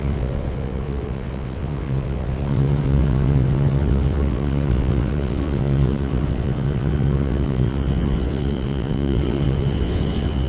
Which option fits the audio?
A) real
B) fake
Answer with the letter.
B